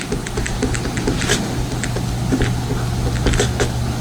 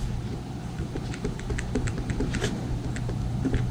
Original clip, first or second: first